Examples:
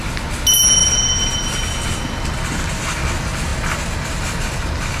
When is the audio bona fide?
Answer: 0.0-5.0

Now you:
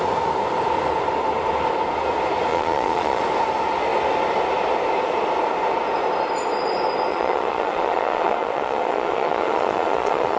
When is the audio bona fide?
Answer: 0.0-2.5; 3.2-7.1

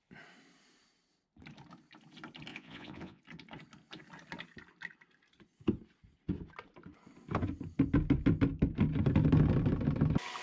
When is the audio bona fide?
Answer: 0.0-2.5; 3.2-10.4

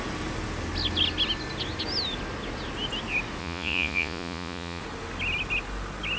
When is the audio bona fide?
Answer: 0.0-3.4; 4.8-6.2